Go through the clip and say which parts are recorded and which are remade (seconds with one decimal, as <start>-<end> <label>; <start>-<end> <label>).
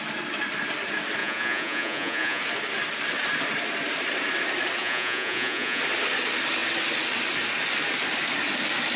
0.0-1.2 recorded; 1.2-2.4 remade; 2.4-4.8 recorded; 4.8-5.8 remade; 5.8-9.0 recorded